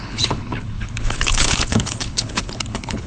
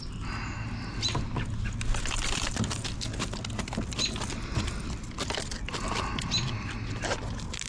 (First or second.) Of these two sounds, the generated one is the first